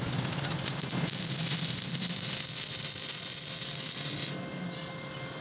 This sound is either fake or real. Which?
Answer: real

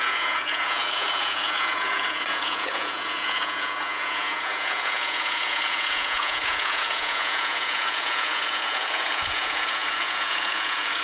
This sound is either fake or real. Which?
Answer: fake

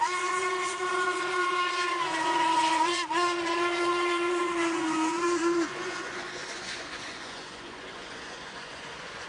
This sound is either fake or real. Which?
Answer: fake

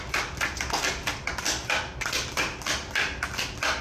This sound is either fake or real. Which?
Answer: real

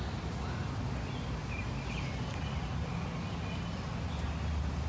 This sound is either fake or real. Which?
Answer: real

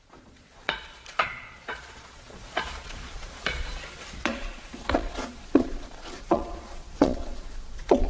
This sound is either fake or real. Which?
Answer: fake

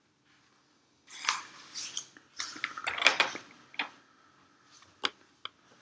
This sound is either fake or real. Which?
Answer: real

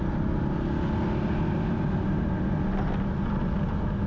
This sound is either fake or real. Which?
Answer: real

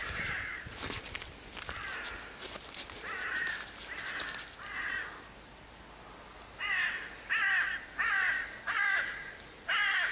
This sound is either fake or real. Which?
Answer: real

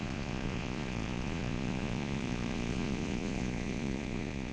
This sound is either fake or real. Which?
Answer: fake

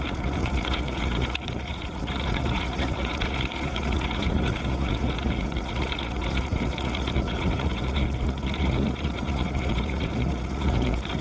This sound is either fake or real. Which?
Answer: fake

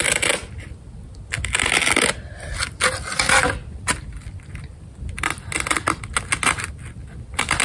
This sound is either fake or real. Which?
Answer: real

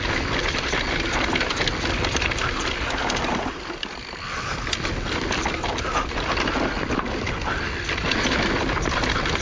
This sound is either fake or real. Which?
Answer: real